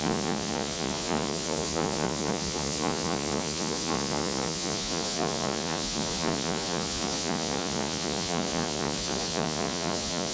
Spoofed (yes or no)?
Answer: yes